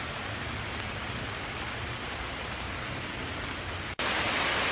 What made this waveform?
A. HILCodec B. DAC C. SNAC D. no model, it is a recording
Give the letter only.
D